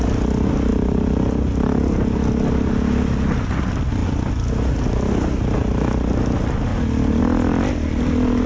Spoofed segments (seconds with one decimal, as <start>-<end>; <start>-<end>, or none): none

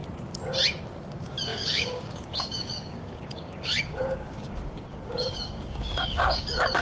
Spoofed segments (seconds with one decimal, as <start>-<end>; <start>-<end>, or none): 1.1-6.8

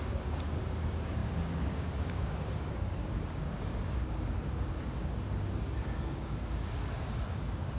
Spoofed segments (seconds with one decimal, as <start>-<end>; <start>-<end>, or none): 0.0-7.8

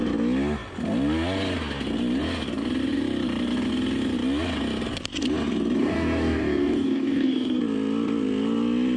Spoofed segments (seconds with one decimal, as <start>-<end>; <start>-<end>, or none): 5.8-7.6

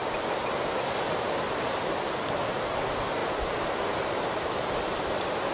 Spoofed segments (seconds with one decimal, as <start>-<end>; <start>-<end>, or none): none

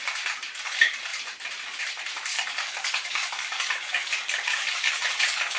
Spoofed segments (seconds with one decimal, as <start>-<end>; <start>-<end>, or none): 2.3-5.6

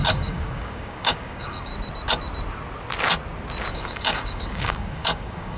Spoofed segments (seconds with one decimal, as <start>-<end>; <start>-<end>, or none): 0.0-1.7; 3.7-5.6